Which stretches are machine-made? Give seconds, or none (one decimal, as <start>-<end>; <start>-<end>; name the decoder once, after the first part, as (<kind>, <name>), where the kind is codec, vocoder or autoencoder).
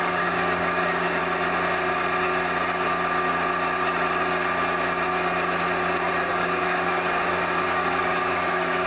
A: 0.0-1.2 (codec, DAC); 6.3-8.9